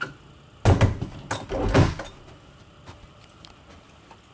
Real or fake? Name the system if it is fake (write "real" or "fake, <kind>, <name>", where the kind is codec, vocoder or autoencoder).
real